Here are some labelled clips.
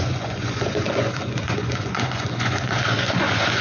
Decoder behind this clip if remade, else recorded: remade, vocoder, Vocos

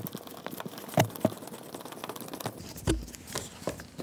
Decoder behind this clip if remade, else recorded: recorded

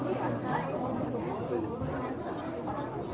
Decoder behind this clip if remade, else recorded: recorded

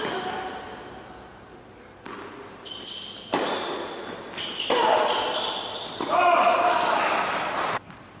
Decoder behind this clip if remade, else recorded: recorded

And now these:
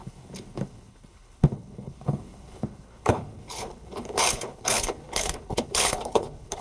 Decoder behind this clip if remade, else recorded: remade, codec, HILCodec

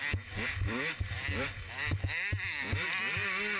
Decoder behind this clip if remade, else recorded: recorded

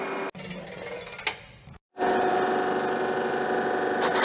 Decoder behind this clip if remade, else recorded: recorded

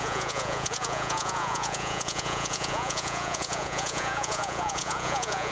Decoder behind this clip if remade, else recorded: remade, vocoder, Vocos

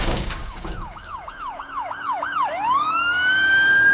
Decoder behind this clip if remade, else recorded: remade, codec, DAC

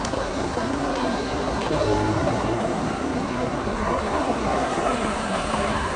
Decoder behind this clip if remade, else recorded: remade, codec, SNAC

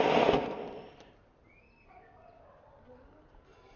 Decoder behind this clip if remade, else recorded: recorded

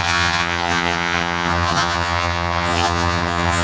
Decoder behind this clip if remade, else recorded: remade, vocoder, HiFi-GAN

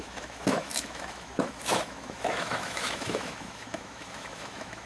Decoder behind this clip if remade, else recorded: remade, autoencoder, DAC-VAE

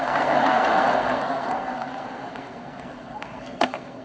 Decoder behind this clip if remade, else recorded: remade, codec, SNAC